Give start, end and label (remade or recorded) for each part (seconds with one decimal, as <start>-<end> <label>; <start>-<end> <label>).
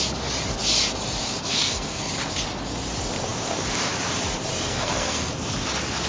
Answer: 0.0-1.4 recorded; 1.4-2.1 remade; 2.1-4.5 recorded; 4.5-5.3 remade; 5.3-6.1 recorded